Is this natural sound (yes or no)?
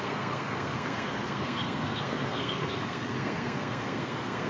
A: no